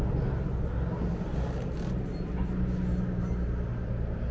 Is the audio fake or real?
real